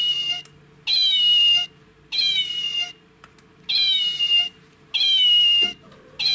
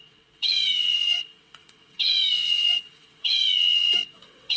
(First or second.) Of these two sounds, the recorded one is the first